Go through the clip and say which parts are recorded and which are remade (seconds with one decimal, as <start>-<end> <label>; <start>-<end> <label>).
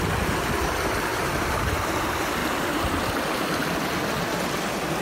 0.0-1.1 recorded; 1.1-1.9 remade; 1.9-5.0 recorded